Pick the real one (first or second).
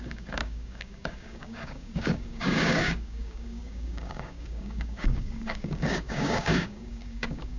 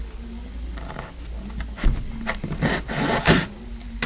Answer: second